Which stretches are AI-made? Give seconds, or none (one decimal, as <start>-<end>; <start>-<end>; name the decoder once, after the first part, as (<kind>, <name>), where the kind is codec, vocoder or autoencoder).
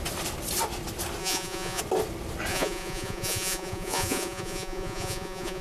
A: 1.2-1.8 (vocoder, Vocos); 2.5-5.6